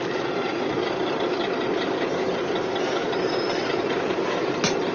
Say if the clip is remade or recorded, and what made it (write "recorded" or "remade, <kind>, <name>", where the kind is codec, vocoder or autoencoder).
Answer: recorded